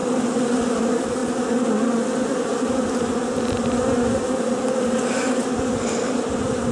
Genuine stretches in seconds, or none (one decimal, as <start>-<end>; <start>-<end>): 0.0-6.7